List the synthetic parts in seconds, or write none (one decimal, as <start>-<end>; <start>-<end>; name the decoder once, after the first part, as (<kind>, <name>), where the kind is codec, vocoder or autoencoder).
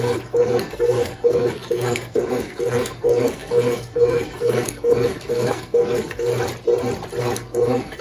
0.0-6.3 (codec, SNAC); 7.2-8.0